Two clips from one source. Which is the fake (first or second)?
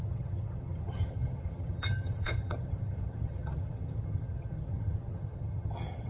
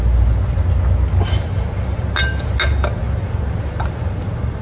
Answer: first